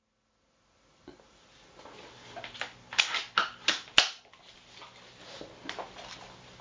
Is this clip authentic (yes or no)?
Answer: yes